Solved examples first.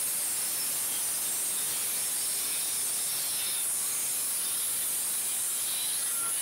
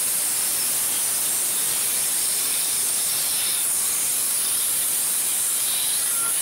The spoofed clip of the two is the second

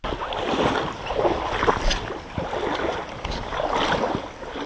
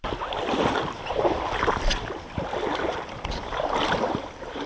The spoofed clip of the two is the second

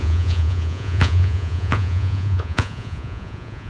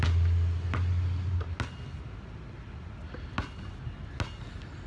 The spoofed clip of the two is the first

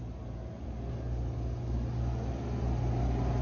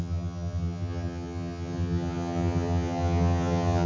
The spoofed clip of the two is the second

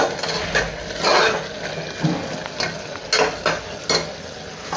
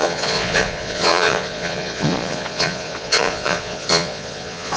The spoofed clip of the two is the second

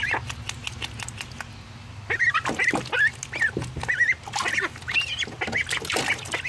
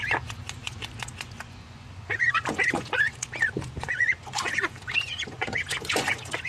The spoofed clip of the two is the second